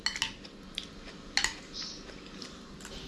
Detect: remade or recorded recorded